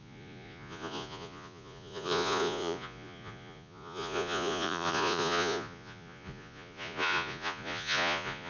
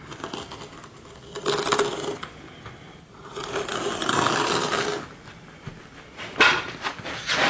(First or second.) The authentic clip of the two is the second